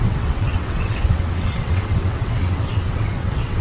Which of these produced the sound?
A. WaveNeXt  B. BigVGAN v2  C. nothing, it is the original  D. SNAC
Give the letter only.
A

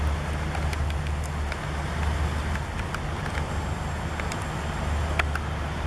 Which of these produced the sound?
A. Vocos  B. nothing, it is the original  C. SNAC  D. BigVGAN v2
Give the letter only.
B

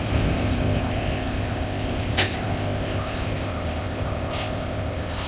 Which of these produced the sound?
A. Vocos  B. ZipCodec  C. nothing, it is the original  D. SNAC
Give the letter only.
B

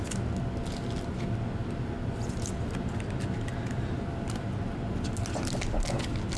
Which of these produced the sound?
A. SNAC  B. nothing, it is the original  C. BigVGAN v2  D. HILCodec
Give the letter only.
B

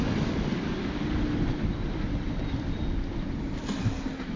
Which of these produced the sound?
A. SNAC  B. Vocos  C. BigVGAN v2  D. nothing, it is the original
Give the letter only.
D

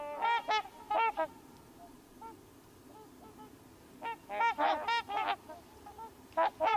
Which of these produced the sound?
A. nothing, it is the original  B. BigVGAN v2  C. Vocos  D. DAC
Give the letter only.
A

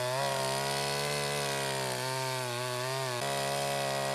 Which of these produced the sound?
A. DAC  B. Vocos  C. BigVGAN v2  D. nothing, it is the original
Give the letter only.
D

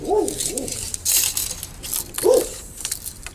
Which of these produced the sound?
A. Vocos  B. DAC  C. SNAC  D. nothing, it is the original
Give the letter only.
D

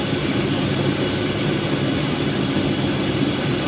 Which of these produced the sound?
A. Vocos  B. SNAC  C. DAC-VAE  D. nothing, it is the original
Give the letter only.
D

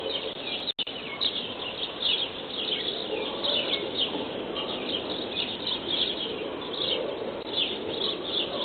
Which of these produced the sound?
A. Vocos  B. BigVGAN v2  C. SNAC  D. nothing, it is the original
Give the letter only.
D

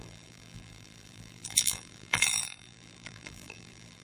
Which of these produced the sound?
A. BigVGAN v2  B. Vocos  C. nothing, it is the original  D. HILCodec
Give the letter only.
A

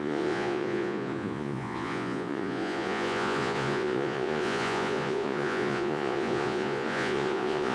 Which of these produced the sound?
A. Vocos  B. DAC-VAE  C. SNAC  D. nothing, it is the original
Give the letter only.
A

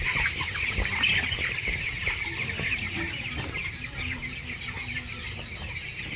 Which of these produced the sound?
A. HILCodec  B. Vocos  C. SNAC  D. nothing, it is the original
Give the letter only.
D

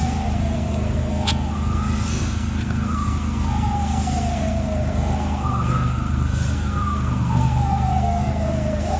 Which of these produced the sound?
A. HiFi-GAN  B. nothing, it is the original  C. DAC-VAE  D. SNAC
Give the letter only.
D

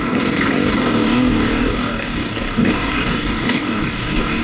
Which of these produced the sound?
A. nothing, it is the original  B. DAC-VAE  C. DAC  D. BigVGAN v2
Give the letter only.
C